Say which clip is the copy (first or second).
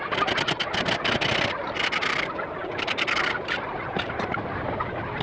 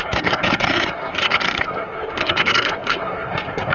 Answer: second